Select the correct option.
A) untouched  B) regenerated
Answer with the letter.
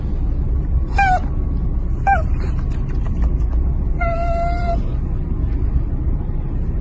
A